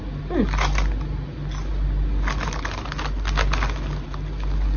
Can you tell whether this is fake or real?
real